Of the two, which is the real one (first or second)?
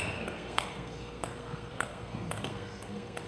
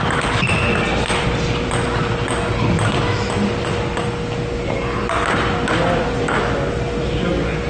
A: second